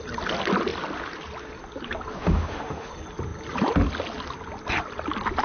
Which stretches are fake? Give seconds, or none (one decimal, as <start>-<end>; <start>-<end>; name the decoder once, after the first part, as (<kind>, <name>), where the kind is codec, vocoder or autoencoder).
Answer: 2.1-2.9 (autoencoder, DAC-VAE)